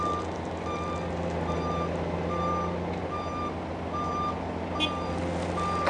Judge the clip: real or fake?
real